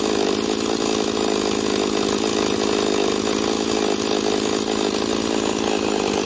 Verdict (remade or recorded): recorded